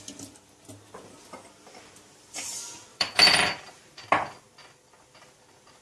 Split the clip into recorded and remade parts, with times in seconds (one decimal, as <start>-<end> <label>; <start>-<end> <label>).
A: 0.0-2.9 recorded; 2.9-4.1 remade; 4.1-5.8 recorded